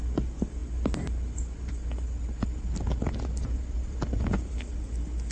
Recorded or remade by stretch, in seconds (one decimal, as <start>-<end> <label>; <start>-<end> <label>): 0.0-5.3 recorded